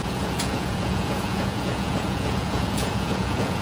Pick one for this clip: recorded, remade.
remade